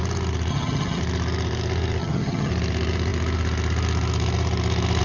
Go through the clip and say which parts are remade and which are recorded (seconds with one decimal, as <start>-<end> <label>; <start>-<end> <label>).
0.0-0.5 recorded; 0.5-1.0 remade; 1.0-2.0 recorded; 2.0-2.5 remade; 2.5-5.0 recorded